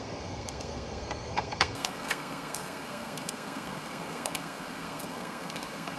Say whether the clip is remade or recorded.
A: remade